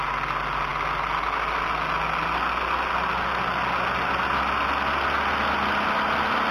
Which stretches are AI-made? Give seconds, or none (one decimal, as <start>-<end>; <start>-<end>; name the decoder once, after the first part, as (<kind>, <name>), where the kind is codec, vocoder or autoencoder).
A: none